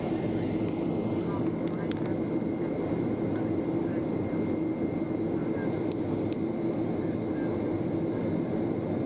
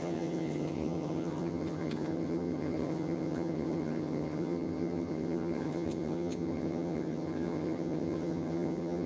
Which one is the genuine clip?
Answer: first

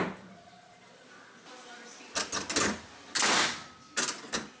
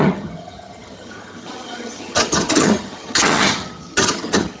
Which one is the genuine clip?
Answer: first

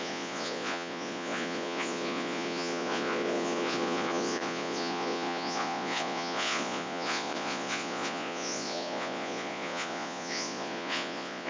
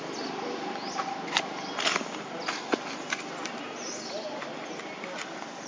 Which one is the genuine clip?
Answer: second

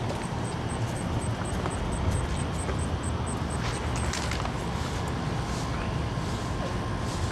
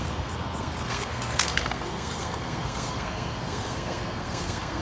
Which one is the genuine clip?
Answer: first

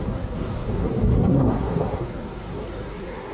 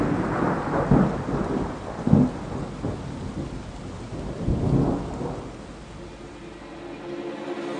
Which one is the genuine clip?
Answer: second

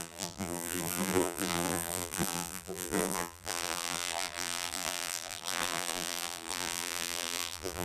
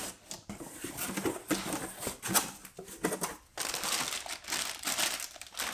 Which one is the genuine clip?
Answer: second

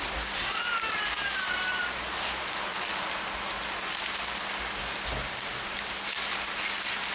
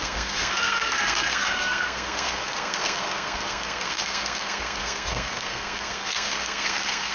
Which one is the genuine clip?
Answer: first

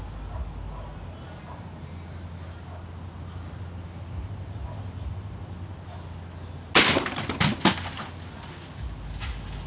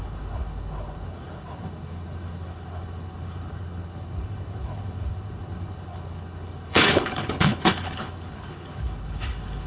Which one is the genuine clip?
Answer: first